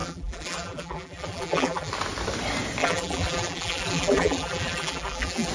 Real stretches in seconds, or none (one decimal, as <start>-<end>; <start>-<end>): 1.9-2.8